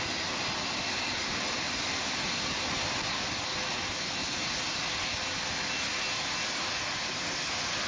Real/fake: real